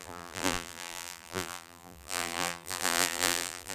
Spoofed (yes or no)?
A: yes